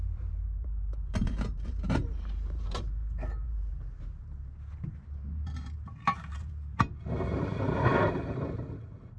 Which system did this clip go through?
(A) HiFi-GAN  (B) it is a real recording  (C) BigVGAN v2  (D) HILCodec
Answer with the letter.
C